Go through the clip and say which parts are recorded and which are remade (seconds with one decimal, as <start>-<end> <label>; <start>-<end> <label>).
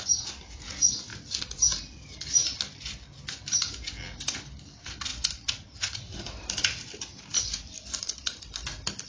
0.0-5.1 recorded; 5.1-7.2 remade; 7.2-9.1 recorded